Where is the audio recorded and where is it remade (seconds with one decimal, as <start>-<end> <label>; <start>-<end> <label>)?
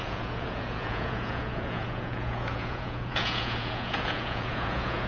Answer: 0.0-5.1 remade